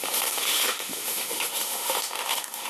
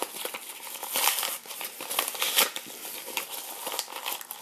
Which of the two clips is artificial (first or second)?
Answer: first